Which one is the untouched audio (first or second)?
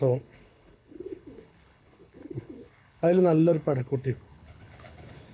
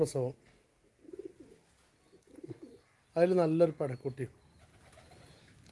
second